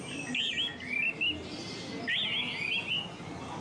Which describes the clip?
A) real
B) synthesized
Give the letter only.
A